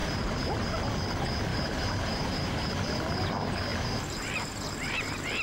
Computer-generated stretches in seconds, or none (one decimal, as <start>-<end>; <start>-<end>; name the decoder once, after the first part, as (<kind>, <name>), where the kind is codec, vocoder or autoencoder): 0.0-0.6 (vocoder, BigVGAN v2); 1.5-3.3; 3.7-4.5